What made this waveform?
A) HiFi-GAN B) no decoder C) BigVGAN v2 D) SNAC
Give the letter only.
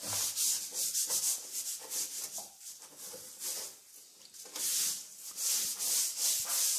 B